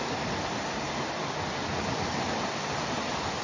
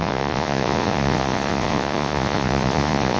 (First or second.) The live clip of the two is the first